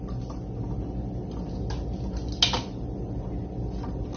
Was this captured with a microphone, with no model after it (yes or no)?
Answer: yes